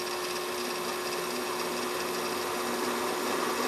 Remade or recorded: recorded